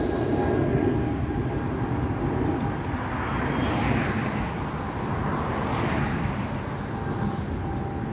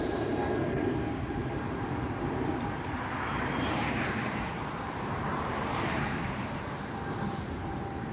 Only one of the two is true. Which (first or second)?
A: first